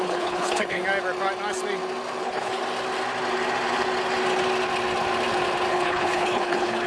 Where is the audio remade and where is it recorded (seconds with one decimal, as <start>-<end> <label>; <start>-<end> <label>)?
0.0-0.8 remade; 0.8-2.2 recorded; 2.2-2.6 remade; 2.6-5.7 recorded; 5.7-6.9 remade